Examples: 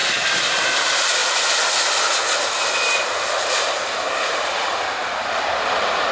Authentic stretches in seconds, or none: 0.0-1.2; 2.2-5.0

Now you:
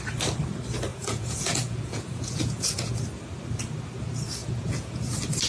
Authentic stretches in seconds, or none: 0.0-0.9; 2.9-4.4; 5.1-5.5

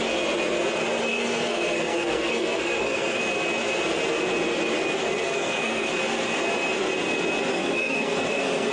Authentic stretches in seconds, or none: 0.0-1.1; 3.2-5.0; 5.9-7.5

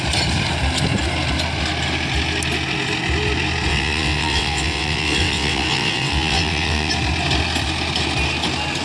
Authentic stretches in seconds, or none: 0.0-3.7; 6.9-8.8

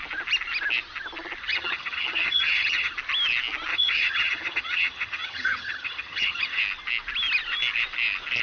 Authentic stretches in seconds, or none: 0.0-1.5; 2.9-3.7; 6.6-8.4

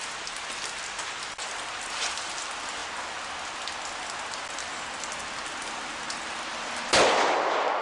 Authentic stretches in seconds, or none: 0.0-7.8